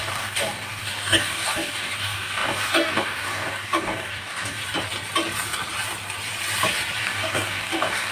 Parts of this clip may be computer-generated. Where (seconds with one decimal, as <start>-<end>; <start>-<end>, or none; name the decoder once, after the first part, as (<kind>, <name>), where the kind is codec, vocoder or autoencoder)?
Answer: 0.0-4.6 (codec, DAC); 7.0-8.1